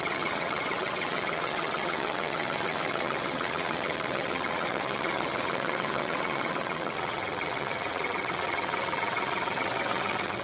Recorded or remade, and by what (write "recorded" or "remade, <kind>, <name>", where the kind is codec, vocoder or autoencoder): remade, vocoder, WaveNeXt